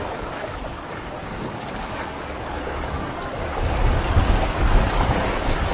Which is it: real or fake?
fake